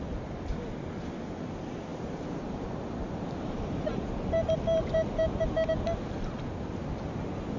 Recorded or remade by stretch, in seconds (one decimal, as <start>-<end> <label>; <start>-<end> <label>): 0.0-1.9 recorded; 1.9-3.5 remade; 3.5-7.6 recorded